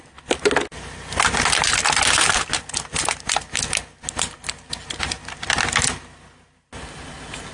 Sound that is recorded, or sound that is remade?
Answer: recorded